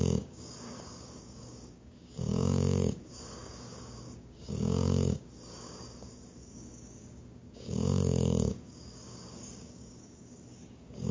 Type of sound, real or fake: fake